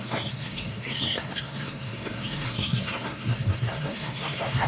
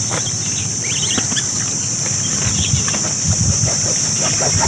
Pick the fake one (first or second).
first